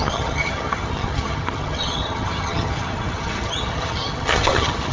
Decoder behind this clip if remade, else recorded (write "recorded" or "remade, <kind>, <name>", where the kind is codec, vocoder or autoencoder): remade, vocoder, HiFi-GAN